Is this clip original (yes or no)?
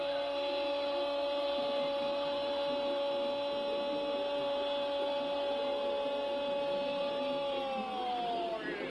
yes